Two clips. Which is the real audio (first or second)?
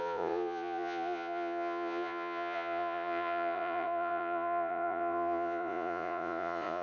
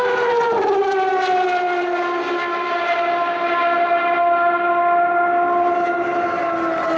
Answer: second